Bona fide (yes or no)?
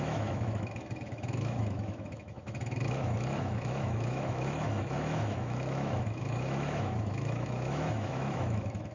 no